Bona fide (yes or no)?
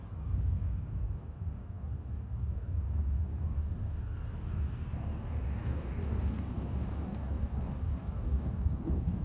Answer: no